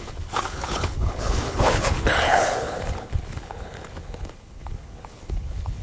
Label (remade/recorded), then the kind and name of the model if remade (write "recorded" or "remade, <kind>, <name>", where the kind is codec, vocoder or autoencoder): remade, codec, HILCodec